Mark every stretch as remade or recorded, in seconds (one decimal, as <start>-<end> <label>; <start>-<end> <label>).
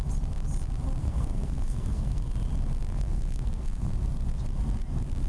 0.0-1.0 recorded; 1.0-2.3 remade; 2.3-2.9 recorded; 2.9-3.9 remade; 3.9-5.3 recorded